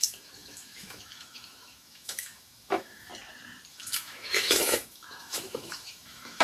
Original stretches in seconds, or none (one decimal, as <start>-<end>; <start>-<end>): 3.1-3.7